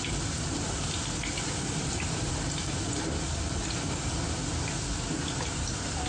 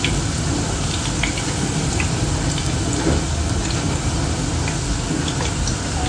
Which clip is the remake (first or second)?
first